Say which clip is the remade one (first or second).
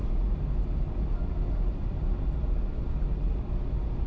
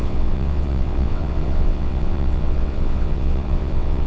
second